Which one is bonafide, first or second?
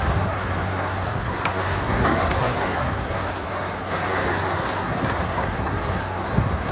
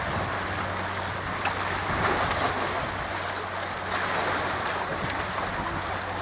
second